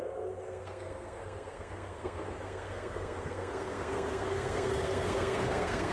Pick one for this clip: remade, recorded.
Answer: remade